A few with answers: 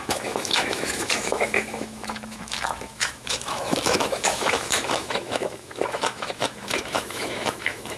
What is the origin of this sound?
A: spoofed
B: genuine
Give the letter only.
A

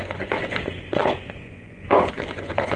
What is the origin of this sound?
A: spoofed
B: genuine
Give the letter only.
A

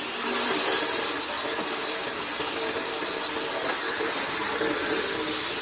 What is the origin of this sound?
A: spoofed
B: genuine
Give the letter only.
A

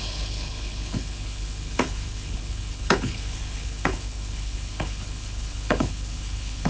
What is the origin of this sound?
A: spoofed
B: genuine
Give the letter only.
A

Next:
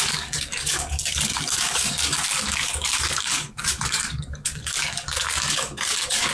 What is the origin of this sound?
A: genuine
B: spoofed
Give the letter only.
B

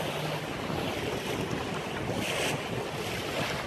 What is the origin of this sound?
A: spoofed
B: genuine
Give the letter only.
B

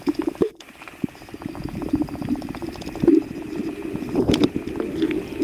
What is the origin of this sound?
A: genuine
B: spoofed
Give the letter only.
A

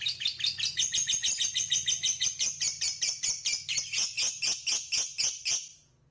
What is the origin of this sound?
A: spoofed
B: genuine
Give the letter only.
B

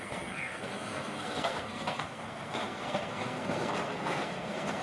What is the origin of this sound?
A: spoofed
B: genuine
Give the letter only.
A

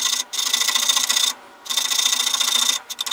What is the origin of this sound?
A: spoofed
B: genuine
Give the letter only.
B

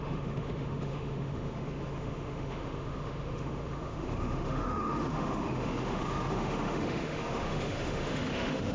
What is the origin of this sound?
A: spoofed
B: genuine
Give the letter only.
A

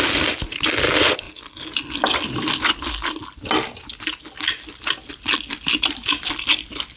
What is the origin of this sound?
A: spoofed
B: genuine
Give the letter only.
B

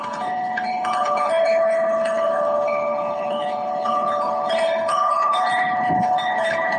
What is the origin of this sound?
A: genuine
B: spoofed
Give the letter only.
B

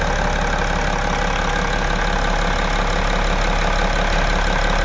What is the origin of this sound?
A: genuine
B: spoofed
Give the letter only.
A